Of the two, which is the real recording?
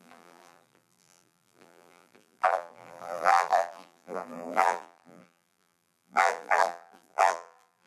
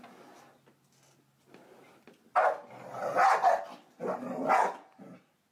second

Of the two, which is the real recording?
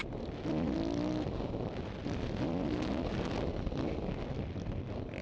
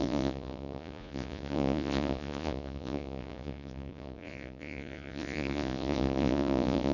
first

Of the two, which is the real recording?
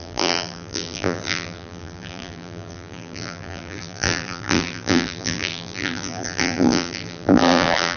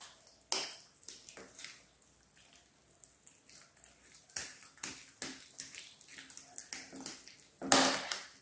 second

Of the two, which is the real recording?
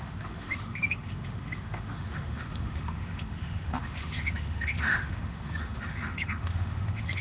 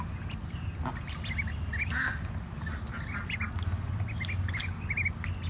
second